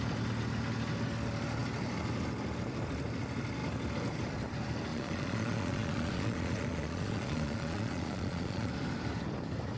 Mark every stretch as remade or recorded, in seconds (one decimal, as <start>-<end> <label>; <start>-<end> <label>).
0.0-4.9 recorded; 4.9-8.7 remade; 8.7-9.8 recorded

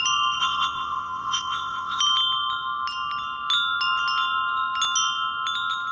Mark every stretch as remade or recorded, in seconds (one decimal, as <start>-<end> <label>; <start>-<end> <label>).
0.0-0.4 recorded; 0.4-2.0 remade; 2.0-5.9 recorded

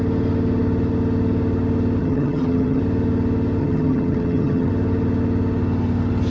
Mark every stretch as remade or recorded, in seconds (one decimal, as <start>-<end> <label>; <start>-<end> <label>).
0.0-2.0 recorded; 2.0-2.8 remade; 2.8-3.6 recorded; 3.6-4.7 remade; 4.7-6.3 recorded

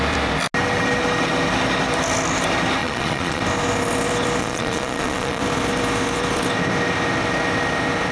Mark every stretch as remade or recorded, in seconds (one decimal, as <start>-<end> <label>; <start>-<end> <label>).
0.0-2.8 recorded; 2.8-3.4 remade; 3.4-4.4 recorded; 4.4-5.4 remade; 5.4-8.1 recorded

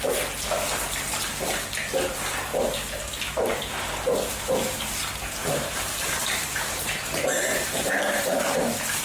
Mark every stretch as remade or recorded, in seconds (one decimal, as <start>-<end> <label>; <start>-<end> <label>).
0.0-5.4 recorded; 5.4-8.0 remade; 8.0-9.0 recorded